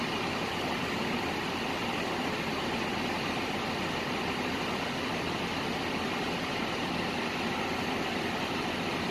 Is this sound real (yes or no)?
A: yes